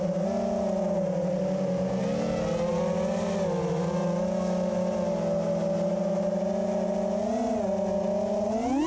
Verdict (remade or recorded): recorded